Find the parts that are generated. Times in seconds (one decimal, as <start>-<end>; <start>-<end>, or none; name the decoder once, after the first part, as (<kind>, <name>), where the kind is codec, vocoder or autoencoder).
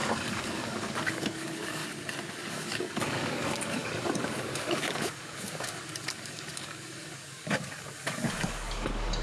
0.0-1.8 (codec, DAC); 2.5-9.2